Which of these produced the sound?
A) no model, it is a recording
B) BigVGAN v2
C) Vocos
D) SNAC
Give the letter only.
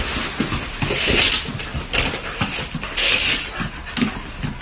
A